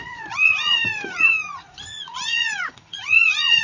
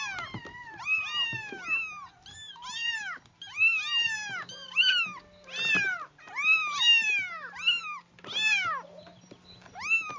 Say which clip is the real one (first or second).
second